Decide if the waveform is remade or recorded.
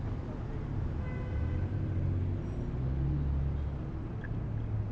recorded